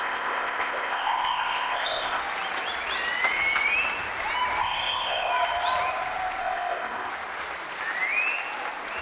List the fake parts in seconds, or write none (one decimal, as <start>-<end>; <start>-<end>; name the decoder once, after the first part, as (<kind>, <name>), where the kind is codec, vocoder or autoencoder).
0.0-2.2 (codec, ZipCodec); 4.6-5.3; 6.4-7.1